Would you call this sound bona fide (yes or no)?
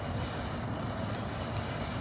yes